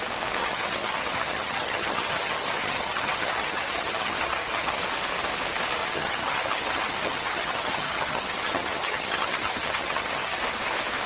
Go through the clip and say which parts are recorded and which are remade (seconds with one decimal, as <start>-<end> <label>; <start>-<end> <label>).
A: 0.0-0.4 recorded; 0.4-4.8 remade; 4.8-5.8 recorded; 5.8-10.4 remade; 10.4-11.1 recorded